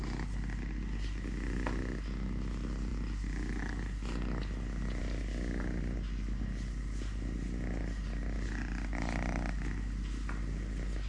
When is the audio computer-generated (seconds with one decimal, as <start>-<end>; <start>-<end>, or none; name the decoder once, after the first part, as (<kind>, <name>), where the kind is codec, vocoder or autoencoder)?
none